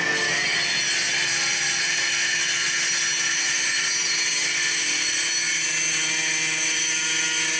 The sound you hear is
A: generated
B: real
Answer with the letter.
B